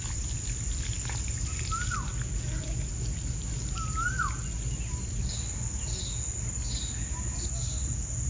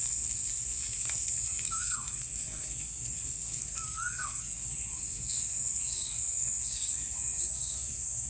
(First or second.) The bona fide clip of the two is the first